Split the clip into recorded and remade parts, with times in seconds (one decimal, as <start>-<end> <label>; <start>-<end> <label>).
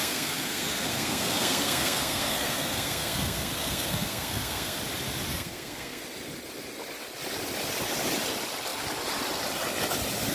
0.0-4.8 remade; 4.8-5.3 recorded; 5.3-6.0 remade; 6.0-10.3 recorded